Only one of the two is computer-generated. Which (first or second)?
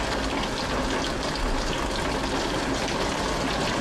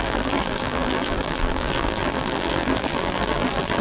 second